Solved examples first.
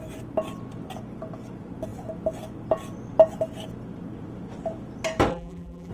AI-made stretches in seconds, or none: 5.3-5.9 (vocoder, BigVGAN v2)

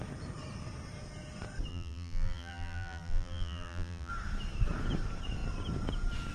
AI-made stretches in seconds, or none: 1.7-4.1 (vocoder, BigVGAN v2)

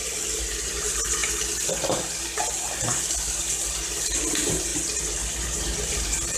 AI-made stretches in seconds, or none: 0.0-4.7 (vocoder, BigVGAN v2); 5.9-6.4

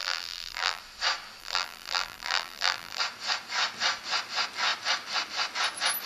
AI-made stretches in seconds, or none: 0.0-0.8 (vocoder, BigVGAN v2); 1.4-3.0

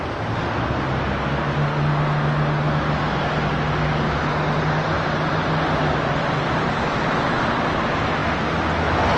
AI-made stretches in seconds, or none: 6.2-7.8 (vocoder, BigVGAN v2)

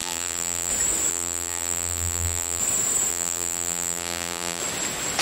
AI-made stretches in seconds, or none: 0.0-0.7 (vocoder, BigVGAN v2); 1.1-2.6; 3.1-4.6

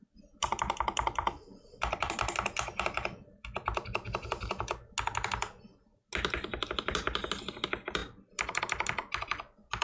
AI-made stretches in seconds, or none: 0.4-4.6 (vocoder, BigVGAN v2); 8.0-8.6